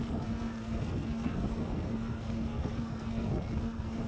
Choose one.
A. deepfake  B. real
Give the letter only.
A